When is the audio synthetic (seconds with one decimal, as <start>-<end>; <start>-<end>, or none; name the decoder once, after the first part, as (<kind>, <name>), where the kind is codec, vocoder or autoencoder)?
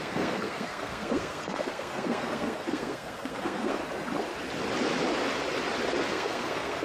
0.0-3.8 (codec, SNAC); 6.1-6.8